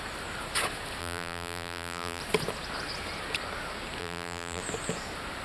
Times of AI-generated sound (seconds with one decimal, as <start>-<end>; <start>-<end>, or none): 1.0-2.2; 4.0-4.6